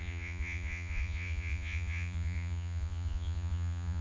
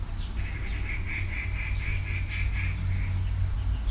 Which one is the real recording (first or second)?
second